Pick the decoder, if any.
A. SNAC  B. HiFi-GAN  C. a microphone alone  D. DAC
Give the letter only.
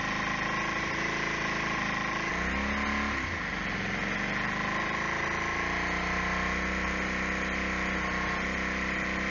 C